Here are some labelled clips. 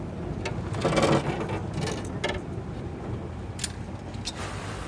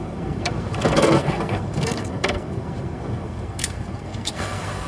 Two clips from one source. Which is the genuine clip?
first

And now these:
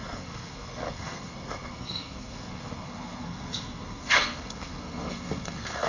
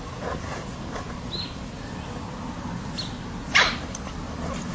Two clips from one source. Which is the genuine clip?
second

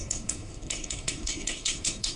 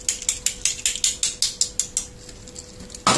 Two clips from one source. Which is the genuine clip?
second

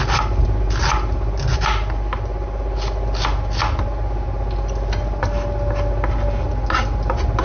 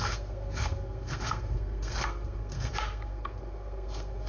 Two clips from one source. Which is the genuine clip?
first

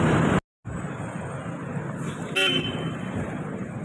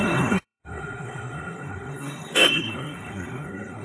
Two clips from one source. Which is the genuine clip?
first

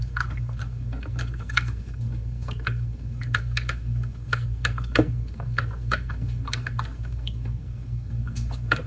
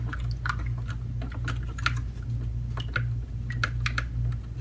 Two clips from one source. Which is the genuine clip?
second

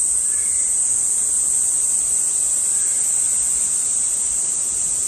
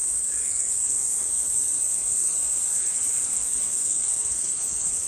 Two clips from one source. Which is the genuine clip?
first